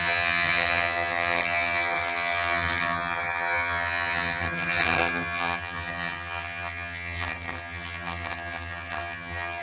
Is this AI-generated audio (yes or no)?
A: yes